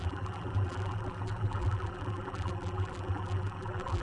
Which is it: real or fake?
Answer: fake